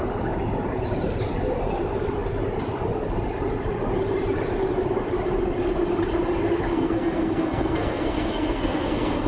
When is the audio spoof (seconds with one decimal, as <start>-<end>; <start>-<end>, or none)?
6.7-9.3